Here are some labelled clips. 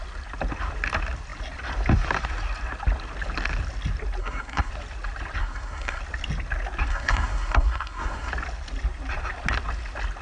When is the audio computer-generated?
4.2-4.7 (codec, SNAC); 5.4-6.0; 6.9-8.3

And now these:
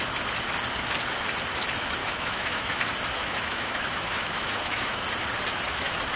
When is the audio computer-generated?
2.0-2.8 (autoencoder, DAC-VAE); 3.2-5.0

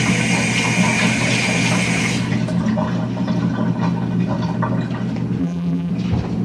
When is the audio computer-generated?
5.4-5.9 (vocoder, BigVGAN v2)

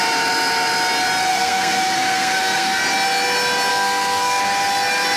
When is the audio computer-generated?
1.3-2.8 (codec, SNAC); 3.7-4.4